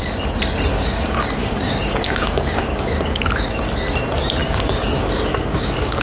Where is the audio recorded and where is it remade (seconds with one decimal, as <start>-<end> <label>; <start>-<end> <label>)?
0.0-0.7 recorded; 0.7-3.2 remade; 3.2-4.4 recorded; 4.4-6.0 remade